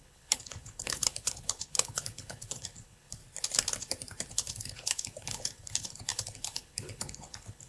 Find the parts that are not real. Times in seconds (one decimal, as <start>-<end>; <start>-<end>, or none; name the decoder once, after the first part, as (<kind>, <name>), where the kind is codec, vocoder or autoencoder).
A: 0.0-3.2 (codec, HILCodec); 4.3-7.7